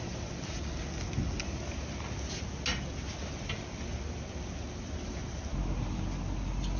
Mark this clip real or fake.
real